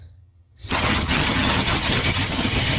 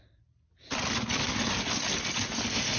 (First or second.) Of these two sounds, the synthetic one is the first